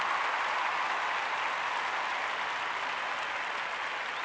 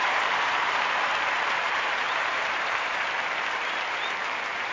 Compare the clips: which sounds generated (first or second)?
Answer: second